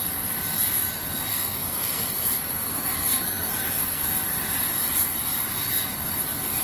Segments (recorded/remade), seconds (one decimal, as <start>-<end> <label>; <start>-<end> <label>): 0.0-1.3 recorded; 1.3-4.1 remade; 4.1-6.6 recorded